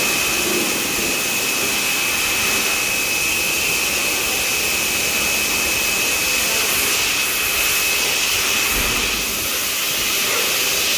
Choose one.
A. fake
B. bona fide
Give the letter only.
B